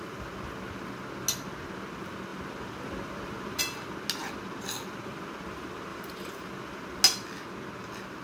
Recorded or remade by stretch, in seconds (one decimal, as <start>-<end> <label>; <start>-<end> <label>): 0.0-5.9 recorded; 5.9-6.5 remade; 6.5-8.2 recorded